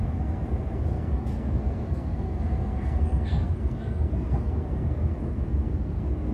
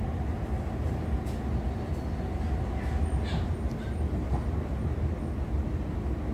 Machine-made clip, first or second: first